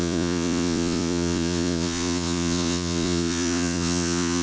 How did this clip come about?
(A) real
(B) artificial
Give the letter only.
B